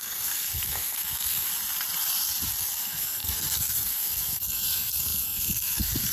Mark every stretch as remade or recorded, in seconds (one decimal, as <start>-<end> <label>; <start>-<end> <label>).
0.0-1.5 remade; 1.5-2.6 recorded; 2.6-6.1 remade